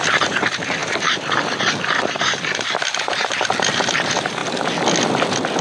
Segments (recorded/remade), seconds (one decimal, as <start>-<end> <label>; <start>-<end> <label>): 0.0-4.4 remade; 4.4-5.6 recorded